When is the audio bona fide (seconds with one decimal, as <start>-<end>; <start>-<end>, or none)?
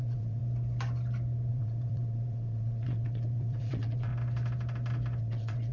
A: 0.4-1.5; 4.1-5.2